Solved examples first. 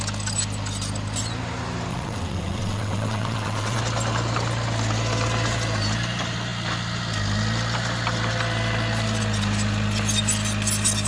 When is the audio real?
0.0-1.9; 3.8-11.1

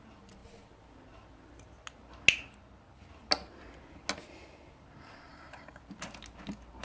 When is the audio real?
0.0-5.3; 5.8-6.8

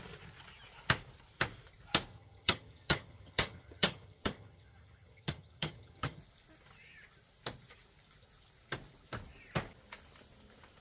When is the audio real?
0.0-2.1; 6.2-10.8

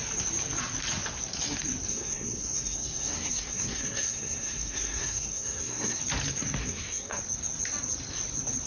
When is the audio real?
0.0-1.9; 6.0-6.6; 7.2-8.7

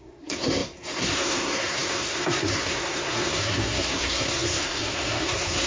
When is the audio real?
none